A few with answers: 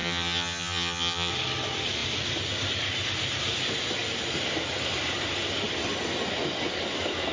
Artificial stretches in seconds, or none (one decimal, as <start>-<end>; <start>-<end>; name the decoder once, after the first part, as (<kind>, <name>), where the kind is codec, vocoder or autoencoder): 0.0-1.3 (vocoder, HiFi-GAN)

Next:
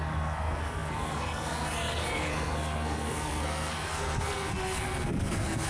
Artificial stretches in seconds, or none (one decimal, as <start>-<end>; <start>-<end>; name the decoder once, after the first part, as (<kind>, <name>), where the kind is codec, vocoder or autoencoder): 0.0-5.7 (codec, SNAC)

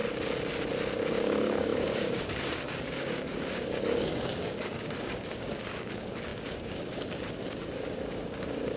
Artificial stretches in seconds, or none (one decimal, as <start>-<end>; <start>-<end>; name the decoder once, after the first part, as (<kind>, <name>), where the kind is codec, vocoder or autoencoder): 0.9-8.8 (codec, DAC)

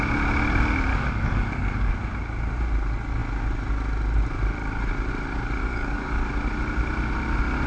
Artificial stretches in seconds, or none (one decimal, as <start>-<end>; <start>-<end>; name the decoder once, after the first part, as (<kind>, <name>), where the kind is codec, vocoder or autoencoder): 0.9-1.9 (codec, DAC); 5.6-6.3

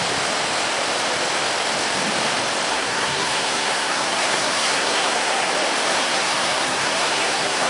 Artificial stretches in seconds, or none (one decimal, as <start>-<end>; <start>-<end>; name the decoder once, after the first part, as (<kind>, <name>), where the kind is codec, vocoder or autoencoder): 2.7-5.5 (codec, SNAC); 5.9-7.7

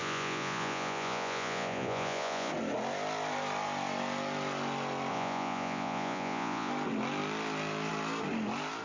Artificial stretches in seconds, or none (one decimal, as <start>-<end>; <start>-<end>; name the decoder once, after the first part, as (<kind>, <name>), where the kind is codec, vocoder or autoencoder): 0.0-2.5 (vocoder, Vocos); 5.1-6.7

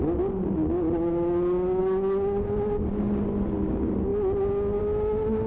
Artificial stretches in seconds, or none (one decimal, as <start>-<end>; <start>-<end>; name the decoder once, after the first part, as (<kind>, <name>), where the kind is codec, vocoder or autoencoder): none